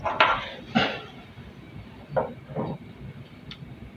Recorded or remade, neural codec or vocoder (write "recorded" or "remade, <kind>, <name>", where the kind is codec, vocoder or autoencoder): recorded